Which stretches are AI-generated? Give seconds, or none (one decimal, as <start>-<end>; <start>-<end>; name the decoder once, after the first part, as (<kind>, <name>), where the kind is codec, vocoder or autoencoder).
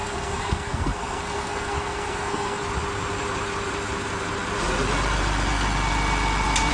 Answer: 0.0-2.6 (codec, SNAC)